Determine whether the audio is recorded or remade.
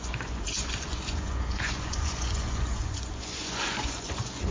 remade